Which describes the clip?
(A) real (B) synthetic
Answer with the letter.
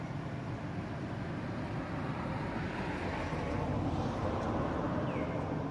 A